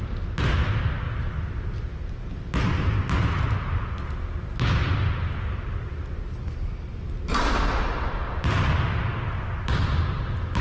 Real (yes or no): yes